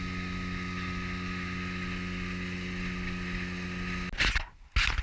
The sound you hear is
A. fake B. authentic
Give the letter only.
B